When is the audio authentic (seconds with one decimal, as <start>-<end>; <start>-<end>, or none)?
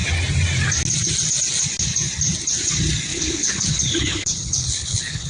0.0-3.1